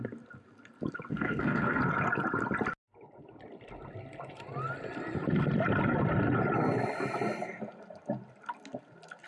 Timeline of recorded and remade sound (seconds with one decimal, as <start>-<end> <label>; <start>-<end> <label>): 0.0-1.1 recorded; 1.1-1.8 remade; 1.8-9.3 recorded

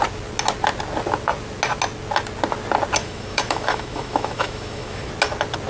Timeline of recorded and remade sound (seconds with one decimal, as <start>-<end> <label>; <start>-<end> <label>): 0.0-3.0 recorded; 3.0-5.1 remade; 5.1-5.7 recorded

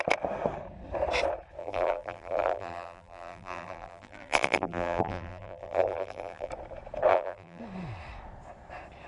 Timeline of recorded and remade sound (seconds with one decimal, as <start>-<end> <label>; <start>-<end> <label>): 0.0-1.6 recorded; 1.6-6.5 remade; 6.5-7.1 recorded; 7.1-7.6 remade; 7.6-9.1 recorded

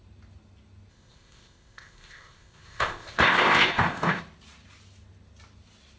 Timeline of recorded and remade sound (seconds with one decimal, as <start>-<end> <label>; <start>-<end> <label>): 0.0-0.9 recorded; 0.9-4.2 remade; 4.2-6.0 recorded

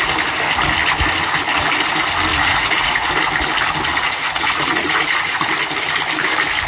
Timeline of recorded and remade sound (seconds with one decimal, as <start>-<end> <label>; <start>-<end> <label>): 0.0-2.3 recorded; 2.3-3.1 remade; 3.1-3.9 recorded; 3.9-5.5 remade; 5.5-6.7 recorded